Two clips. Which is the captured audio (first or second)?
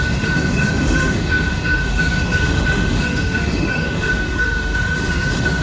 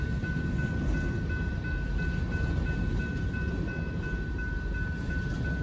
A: second